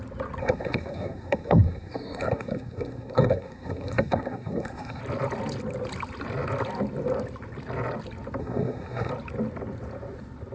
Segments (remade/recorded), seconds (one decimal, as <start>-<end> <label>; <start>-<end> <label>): 0.0-0.4 recorded; 0.4-5.0 remade; 5.0-8.4 recorded; 8.4-9.1 remade; 9.1-10.5 recorded